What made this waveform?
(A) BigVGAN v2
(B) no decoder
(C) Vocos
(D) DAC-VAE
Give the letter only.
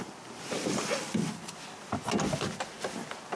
B